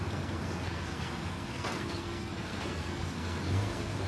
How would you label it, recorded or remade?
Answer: remade